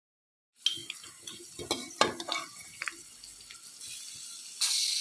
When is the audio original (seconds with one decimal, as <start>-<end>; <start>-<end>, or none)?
0.0-5.0